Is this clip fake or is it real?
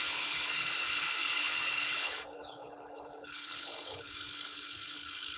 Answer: fake